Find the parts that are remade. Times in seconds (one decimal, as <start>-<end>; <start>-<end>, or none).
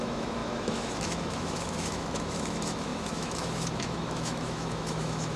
0.0-5.4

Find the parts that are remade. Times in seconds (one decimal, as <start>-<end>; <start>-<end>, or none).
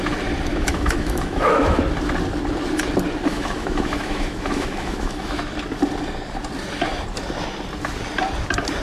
0.5-1.8; 3.3-5.4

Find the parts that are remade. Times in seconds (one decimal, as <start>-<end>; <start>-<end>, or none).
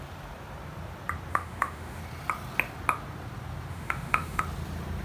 1.3-2.0; 3.7-4.4